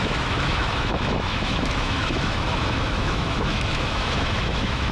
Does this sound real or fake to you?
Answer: fake